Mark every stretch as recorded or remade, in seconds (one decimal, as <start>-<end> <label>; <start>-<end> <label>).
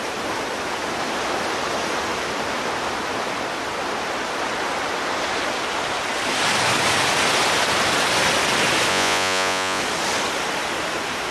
0.0-8.9 recorded; 8.9-9.8 remade; 9.8-11.3 recorded